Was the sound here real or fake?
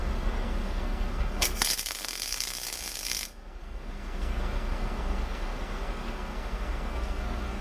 fake